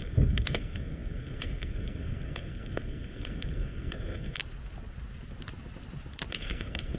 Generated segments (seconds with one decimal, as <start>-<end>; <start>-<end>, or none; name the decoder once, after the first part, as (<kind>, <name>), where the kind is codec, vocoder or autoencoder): 0.0-4.4 (codec, SNAC); 6.3-7.0